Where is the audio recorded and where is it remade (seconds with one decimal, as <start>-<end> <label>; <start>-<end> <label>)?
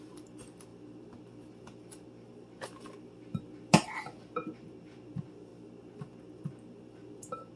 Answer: 0.0-7.6 recorded